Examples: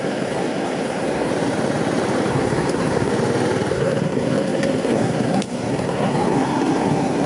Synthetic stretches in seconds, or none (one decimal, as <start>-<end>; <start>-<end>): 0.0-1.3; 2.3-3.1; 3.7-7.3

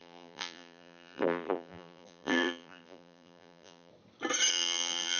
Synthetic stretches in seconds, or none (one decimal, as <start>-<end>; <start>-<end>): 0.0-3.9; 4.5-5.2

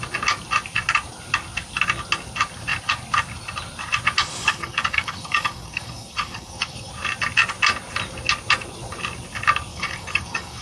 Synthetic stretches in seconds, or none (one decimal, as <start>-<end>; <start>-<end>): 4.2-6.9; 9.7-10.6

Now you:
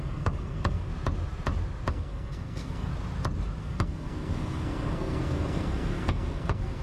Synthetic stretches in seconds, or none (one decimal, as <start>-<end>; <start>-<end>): 0.0-0.9; 1.9-2.9; 3.6-6.8